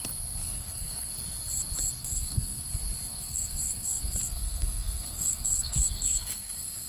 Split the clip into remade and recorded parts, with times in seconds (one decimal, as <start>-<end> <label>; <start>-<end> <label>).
0.0-0.4 recorded; 0.4-1.1 remade; 1.1-2.0 recorded; 2.0-2.7 remade; 2.7-3.1 recorded; 3.1-6.9 remade